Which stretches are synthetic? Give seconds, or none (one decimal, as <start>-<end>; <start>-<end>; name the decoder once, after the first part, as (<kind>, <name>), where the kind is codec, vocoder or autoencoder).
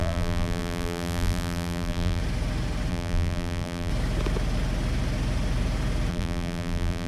0.0-2.2 (vocoder, BigVGAN v2); 2.9-3.9; 6.1-7.1